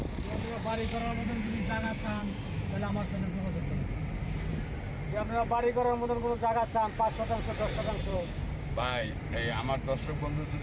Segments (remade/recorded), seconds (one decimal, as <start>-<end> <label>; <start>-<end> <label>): 0.0-0.7 recorded; 0.7-2.2 remade; 2.2-8.1 recorded; 8.1-9.1 remade; 9.1-10.6 recorded